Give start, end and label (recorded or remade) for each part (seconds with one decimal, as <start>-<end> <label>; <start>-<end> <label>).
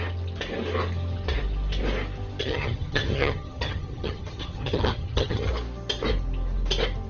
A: 0.0-2.4 recorded; 2.4-5.5 remade; 5.5-7.1 recorded